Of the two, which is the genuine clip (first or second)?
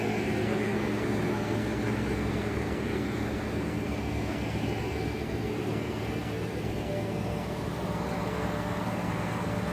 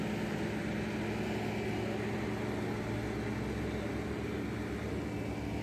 second